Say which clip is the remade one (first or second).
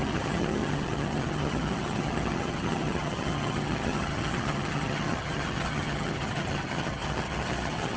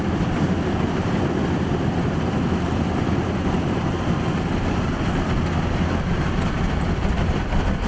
first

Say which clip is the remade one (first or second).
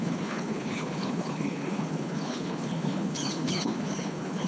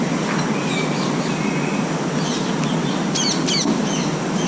first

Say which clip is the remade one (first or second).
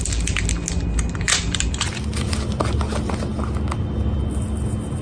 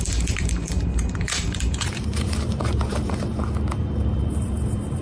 second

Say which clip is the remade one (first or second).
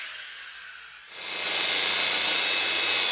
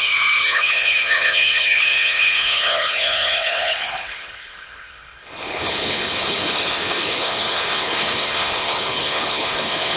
second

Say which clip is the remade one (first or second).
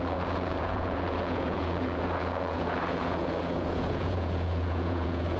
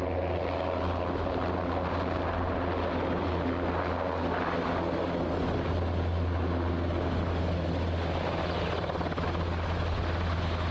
first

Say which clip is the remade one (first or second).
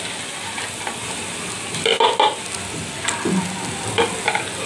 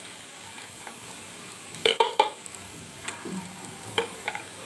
second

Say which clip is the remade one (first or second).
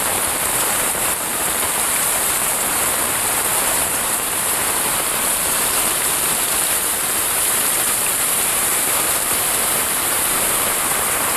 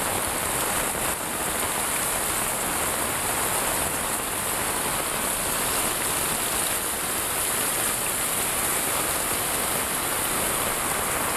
first